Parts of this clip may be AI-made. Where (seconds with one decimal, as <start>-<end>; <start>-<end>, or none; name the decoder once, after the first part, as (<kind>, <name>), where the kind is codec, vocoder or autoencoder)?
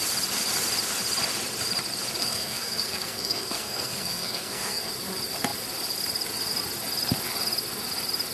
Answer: 2.2-4.9 (codec, SNAC)